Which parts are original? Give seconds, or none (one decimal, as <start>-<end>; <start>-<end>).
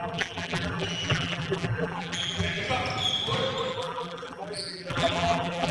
2.6-3.7